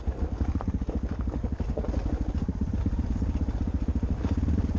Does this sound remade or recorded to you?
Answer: recorded